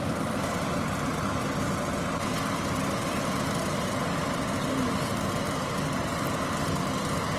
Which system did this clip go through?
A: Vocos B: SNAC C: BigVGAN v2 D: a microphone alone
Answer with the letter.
D